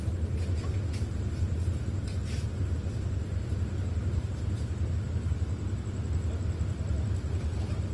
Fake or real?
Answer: real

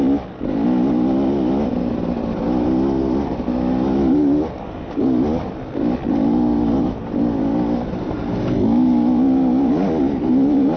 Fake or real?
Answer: real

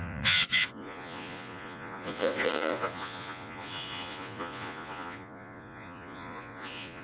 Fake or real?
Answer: fake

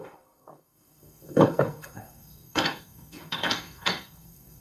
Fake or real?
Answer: fake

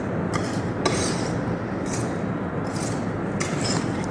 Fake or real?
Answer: real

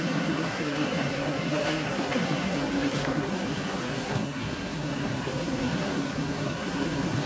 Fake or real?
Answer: fake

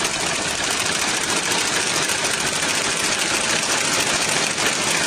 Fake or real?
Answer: real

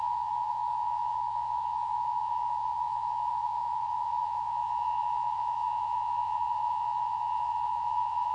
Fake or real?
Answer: fake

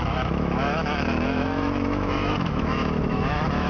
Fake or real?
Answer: fake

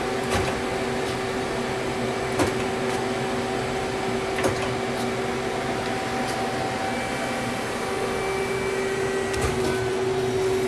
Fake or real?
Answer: real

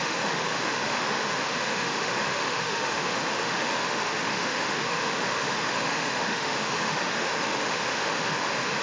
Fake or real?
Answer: fake